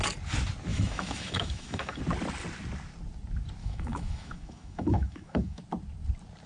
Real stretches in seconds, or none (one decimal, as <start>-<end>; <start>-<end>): 0.0-0.7; 2.0-3.6; 5.6-6.5